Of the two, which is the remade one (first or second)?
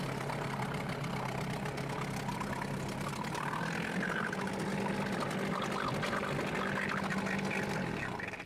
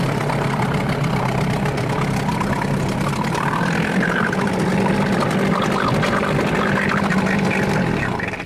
second